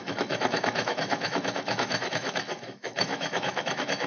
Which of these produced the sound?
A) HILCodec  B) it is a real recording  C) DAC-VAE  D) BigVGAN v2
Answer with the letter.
C